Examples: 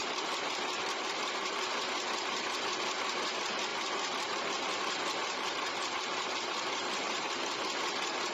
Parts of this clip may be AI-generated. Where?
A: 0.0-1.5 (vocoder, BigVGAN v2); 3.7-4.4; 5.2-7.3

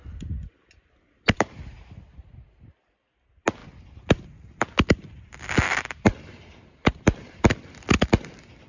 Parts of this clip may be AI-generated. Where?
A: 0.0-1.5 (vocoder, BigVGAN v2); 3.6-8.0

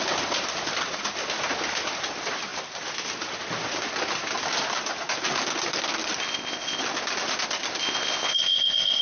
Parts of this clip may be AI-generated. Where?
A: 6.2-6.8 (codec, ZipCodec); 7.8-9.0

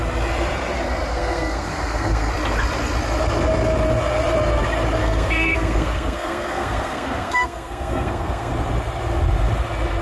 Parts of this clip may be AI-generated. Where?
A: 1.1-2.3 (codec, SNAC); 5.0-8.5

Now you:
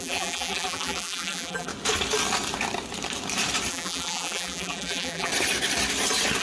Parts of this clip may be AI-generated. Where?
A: 0.0-1.7 (vocoder, BigVGAN v2); 3.7-5.3

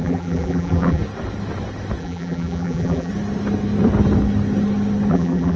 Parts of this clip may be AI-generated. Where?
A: 0.0-1.0 (vocoder, BigVGAN v2); 2.0-3.1; 5.1-5.6